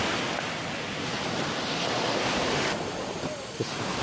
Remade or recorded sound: recorded